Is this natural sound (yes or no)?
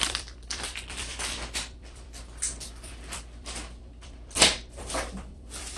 no